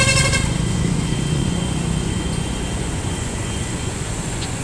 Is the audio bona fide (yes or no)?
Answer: no